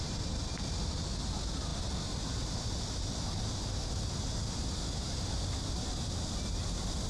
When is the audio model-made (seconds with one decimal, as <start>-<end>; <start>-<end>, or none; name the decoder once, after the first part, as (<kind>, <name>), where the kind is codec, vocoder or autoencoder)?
none